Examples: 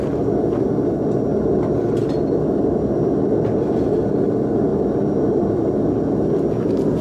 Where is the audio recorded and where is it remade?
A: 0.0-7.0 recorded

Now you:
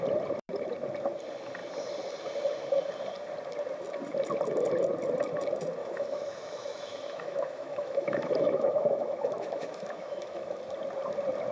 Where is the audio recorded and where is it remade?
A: 0.0-5.8 recorded; 5.8-10.6 remade; 10.6-11.5 recorded